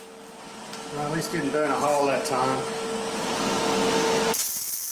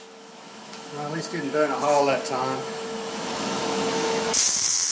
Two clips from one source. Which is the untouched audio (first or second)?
first